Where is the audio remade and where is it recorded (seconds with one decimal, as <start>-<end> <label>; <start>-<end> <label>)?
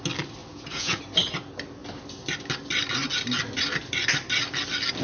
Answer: 0.0-0.4 recorded; 0.4-1.0 remade; 1.0-5.0 recorded